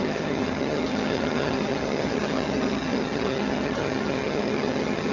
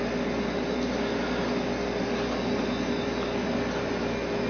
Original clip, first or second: second